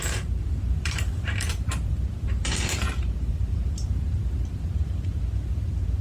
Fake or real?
fake